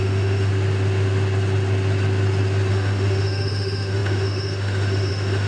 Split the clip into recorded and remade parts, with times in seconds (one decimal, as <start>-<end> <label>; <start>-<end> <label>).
0.0-0.5 remade; 0.5-2.7 recorded; 2.7-5.5 remade